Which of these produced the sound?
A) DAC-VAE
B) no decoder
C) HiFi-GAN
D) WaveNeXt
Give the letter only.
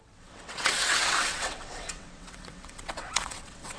D